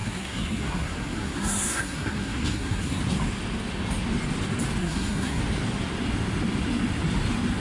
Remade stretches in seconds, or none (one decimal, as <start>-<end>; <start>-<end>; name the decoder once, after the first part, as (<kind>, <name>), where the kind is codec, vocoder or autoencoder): 0.0-3.0 (codec, SNAC); 4.8-5.4